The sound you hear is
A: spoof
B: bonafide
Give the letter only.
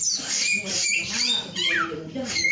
B